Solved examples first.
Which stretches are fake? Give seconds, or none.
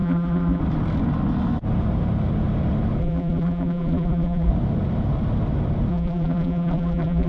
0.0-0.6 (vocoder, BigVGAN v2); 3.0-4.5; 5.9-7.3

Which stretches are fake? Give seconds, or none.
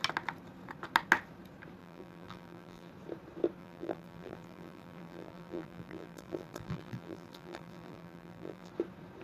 1.8-2.9 (vocoder, BigVGAN v2); 3.6-8.7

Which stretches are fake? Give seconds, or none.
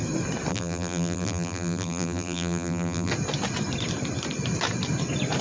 0.5-3.1 (vocoder, BigVGAN v2)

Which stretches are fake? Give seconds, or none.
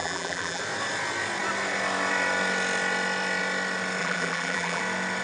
0.0-0.6 (vocoder, BigVGAN v2); 4.0-4.8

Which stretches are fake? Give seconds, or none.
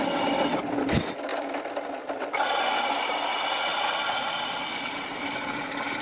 3.7-5.6 (vocoder, BigVGAN v2)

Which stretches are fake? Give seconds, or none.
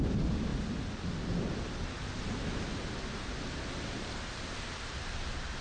0.0-0.5 (vocoder, BigVGAN v2); 3.9-5.6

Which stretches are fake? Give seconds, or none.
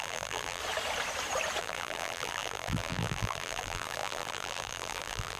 0.0-0.6 (vocoder, BigVGAN v2); 1.6-5.4